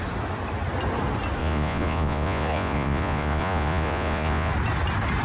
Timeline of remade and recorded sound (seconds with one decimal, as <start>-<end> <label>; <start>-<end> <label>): 0.0-1.4 recorded; 1.4-4.5 remade; 4.5-5.2 recorded